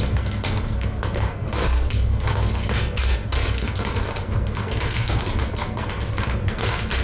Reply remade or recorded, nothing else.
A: remade